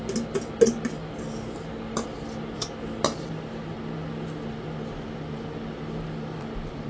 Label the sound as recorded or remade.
recorded